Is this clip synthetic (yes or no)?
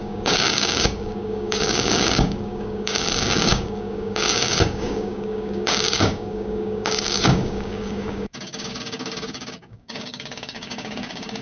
yes